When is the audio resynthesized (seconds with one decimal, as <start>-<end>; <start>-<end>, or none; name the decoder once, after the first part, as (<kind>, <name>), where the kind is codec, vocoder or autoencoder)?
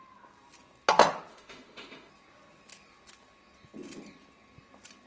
1.3-2.1 (autoencoder, DAC-VAE)